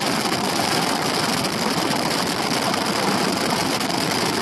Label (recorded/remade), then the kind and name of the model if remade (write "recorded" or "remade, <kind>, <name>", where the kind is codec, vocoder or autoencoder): remade, vocoder, BigVGAN v2